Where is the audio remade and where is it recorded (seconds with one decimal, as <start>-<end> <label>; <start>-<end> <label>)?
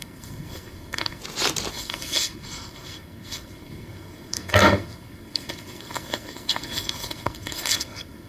0.0-1.2 remade; 1.2-1.7 recorded; 1.7-8.3 remade